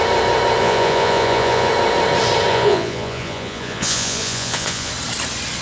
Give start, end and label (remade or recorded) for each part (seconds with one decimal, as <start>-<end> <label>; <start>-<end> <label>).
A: 0.0-0.6 recorded; 0.6-1.7 remade; 1.7-2.5 recorded; 2.5-4.9 remade; 4.9-5.6 recorded